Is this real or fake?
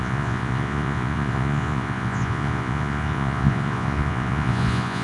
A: fake